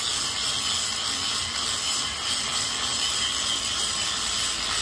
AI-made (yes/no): no